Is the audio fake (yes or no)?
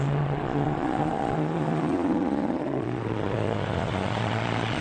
yes